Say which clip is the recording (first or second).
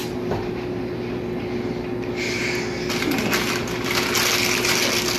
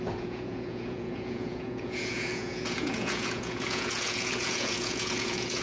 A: first